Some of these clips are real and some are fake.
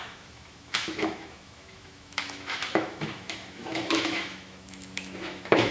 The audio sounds fake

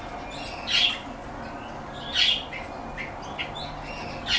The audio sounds real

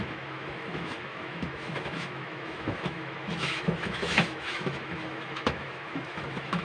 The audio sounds fake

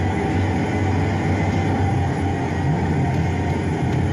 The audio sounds real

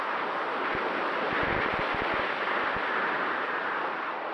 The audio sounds real